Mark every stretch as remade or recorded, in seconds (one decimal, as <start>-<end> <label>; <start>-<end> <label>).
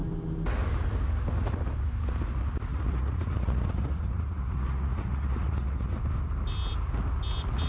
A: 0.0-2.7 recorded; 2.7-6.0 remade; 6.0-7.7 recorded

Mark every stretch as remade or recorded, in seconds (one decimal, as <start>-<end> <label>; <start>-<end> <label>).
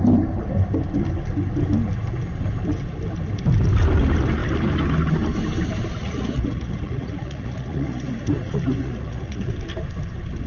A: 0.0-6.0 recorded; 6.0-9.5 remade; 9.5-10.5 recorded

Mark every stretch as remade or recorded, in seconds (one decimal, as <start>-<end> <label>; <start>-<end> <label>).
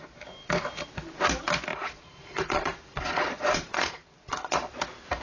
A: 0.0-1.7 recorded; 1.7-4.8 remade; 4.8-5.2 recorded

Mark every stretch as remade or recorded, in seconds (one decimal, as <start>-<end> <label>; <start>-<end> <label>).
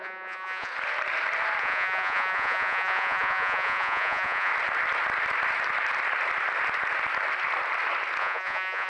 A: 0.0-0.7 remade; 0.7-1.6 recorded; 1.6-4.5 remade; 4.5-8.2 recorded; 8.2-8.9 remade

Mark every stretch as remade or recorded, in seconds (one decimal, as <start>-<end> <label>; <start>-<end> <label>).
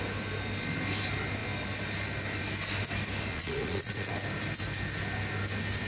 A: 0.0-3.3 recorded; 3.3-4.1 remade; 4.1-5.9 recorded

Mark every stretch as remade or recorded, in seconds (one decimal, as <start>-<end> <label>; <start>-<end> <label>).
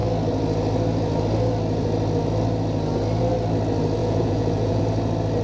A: 0.0-4.0 recorded; 4.0-4.8 remade; 4.8-5.4 recorded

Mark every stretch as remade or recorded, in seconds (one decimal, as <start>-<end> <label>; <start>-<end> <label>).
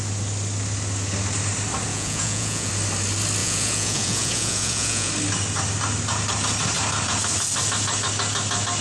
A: 0.0-1.9 recorded; 1.9-2.7 remade; 2.7-3.4 recorded; 3.4-5.1 remade; 5.1-8.8 recorded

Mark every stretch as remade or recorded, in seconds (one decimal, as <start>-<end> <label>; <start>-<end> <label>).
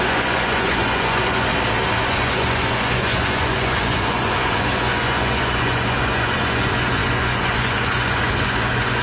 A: 0.0-1.5 remade; 1.5-2.0 recorded; 2.0-9.0 remade